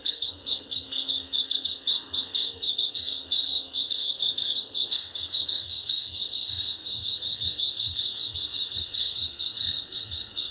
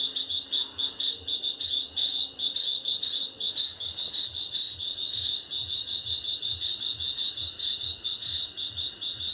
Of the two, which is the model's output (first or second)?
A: first